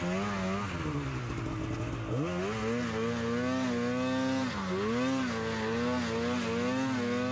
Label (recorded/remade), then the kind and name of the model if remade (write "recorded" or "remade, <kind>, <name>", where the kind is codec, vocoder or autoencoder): recorded